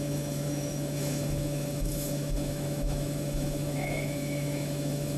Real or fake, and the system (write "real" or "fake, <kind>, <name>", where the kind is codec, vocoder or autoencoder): fake, autoencoder, DAC-VAE